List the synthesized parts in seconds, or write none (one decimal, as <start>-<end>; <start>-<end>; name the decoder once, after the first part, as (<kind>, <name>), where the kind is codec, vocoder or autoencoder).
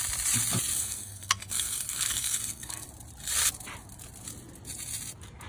0.7-2.9 (codec, SNAC)